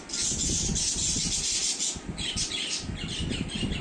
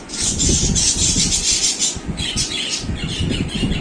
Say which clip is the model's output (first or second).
second